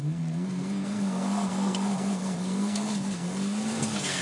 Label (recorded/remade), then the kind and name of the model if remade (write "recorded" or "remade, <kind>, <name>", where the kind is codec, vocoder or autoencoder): remade, codec, SNAC